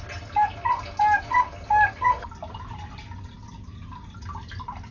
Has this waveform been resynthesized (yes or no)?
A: no